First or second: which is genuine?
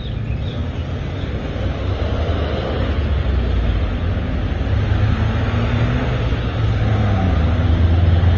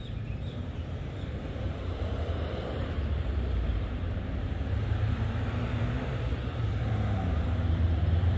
first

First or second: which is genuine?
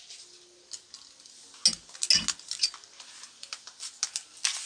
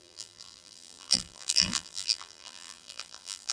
first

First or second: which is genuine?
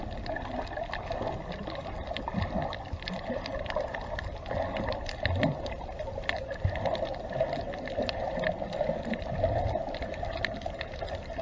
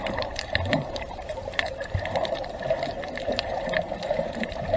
first